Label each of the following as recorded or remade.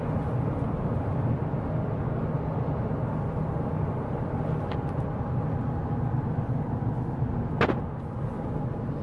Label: recorded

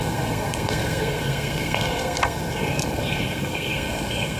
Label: remade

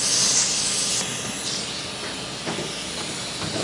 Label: recorded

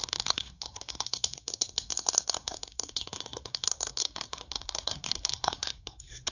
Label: remade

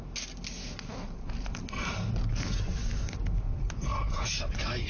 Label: recorded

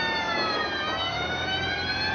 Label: recorded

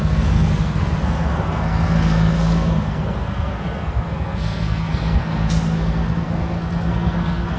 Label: remade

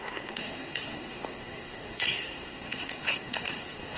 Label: remade